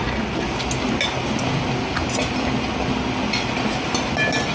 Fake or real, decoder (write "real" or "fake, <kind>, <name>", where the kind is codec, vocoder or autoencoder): real